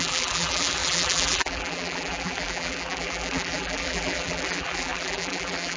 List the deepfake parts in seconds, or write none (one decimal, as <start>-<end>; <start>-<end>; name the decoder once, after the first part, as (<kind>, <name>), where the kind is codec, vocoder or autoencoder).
0.0-5.8 (vocoder, BigVGAN v2)